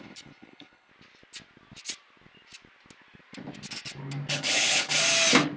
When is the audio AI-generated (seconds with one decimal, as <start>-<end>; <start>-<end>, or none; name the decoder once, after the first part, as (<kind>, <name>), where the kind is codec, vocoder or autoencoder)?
0.0-0.9 (codec, HILCodec); 4.3-5.0